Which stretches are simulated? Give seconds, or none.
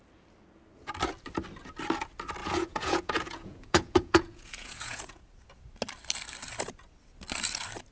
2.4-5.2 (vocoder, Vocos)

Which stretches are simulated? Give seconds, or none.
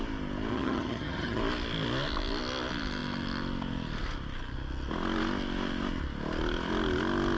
0.5-1.4 (vocoder, HiFi-GAN)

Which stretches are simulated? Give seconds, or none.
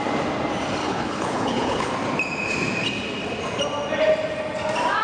0.8-1.9 (codec, HILCodec)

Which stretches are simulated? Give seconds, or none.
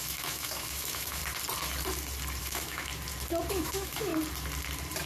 0.0-1.2 (autoencoder, DAC-VAE); 2.4-2.9; 3.5-4.1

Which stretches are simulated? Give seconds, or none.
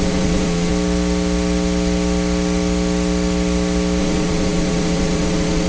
0.0-0.7 (vocoder, Vocos); 4.0-5.7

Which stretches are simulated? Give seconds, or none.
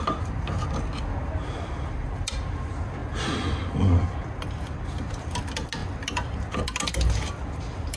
none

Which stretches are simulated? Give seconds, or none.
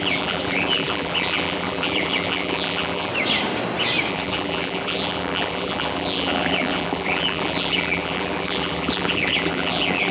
0.0-3.1 (vocoder, BigVGAN v2); 4.1-10.1